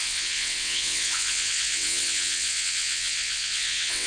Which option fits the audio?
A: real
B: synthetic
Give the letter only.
B